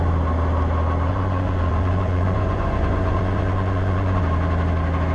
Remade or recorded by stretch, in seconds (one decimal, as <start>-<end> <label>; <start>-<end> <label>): 0.0-1.1 recorded; 1.1-4.2 remade; 4.2-5.1 recorded